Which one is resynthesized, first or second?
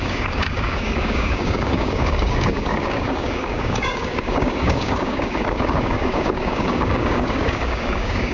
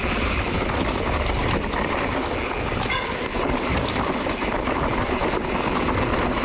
first